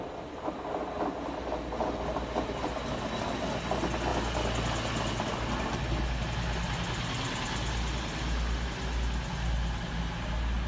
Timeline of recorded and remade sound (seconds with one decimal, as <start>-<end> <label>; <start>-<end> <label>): 0.0-10.7 recorded